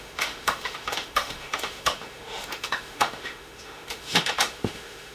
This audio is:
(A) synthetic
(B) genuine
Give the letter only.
A